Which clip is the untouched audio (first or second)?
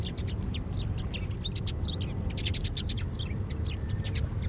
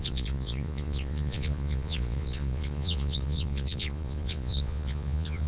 first